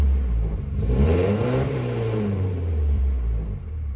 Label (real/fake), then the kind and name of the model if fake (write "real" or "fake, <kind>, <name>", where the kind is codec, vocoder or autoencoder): fake, vocoder, BigVGAN v2